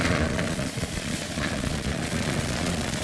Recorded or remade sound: remade